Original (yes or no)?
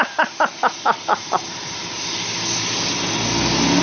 yes